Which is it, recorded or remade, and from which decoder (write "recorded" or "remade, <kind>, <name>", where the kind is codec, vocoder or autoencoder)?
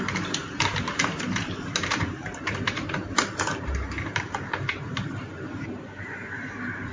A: remade, vocoder, BigVGAN v2